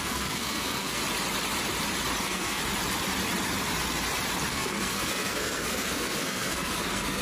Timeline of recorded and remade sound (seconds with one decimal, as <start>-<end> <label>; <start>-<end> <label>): 0.0-1.0 remade; 1.0-2.2 recorded; 2.2-2.6 remade; 2.6-4.5 recorded; 4.5-7.2 remade